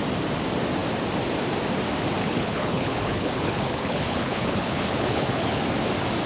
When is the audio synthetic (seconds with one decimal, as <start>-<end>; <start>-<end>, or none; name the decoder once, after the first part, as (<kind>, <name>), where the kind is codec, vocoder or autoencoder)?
2.2-5.6 (codec, HILCodec)